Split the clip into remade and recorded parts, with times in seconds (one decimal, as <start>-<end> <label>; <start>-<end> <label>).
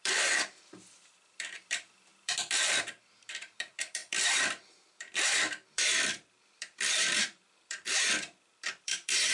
0.0-9.3 remade